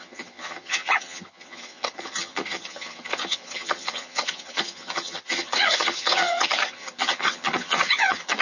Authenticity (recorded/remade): remade